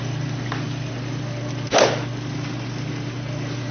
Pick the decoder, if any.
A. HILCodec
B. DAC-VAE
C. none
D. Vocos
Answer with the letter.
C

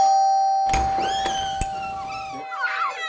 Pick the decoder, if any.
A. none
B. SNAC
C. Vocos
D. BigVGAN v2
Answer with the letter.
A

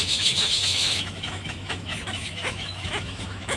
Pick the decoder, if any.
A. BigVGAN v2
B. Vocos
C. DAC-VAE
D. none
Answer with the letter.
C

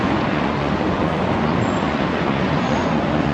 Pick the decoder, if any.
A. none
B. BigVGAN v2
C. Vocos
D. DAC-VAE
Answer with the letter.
C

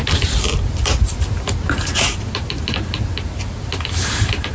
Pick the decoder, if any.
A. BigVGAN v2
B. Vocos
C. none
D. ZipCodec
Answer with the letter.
C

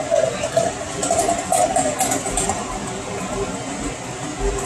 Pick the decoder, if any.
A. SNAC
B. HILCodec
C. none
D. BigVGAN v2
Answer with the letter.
C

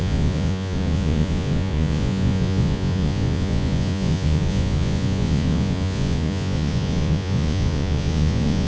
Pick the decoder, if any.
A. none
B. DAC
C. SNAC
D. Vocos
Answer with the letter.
D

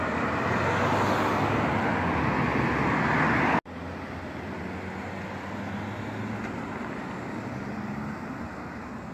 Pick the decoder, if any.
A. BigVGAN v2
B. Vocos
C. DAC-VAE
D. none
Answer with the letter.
D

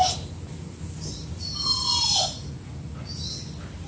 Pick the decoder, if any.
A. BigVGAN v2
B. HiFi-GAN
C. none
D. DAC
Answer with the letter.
C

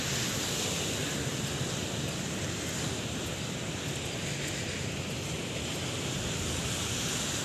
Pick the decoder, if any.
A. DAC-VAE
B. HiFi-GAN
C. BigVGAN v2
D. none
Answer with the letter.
D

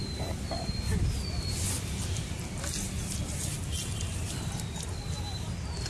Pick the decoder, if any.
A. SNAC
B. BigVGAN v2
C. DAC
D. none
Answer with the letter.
D